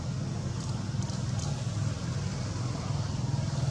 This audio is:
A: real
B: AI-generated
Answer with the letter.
A